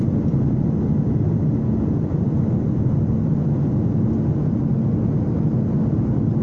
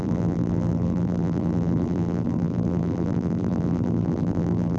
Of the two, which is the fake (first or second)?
second